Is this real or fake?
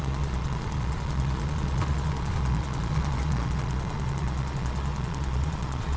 fake